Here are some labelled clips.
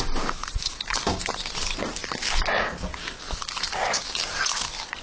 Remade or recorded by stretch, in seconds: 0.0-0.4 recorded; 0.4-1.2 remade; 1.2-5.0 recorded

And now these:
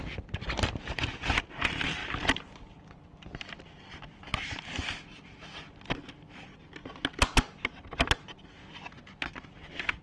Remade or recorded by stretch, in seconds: 0.0-10.0 recorded

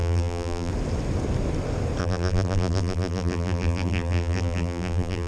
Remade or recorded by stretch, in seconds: 0.0-0.7 remade; 0.7-2.0 recorded; 2.0-5.3 remade

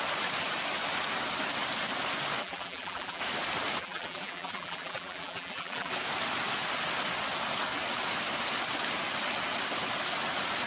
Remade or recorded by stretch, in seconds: 0.0-2.4 recorded; 2.4-3.2 remade; 3.2-3.8 recorded; 3.8-5.9 remade; 5.9-10.7 recorded